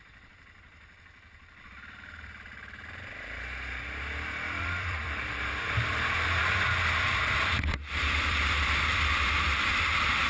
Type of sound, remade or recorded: remade